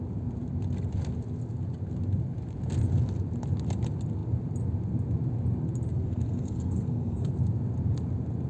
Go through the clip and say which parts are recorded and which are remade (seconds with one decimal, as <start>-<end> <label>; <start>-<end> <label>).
0.0-5.9 recorded; 5.9-7.3 remade; 7.3-8.5 recorded